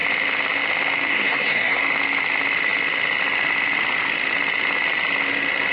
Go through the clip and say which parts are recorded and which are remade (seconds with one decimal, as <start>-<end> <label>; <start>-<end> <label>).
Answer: 0.0-1.1 recorded; 1.1-1.8 remade; 1.8-5.7 recorded